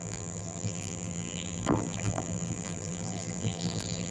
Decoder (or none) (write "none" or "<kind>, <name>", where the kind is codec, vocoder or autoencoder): vocoder, BigVGAN v2